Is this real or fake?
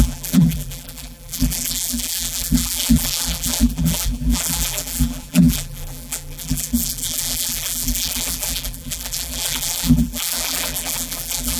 fake